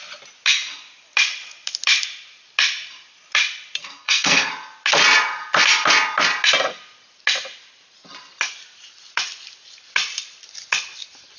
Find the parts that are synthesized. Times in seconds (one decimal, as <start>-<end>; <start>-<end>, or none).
3.8-4.5